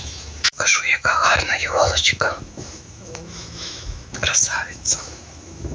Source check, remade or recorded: remade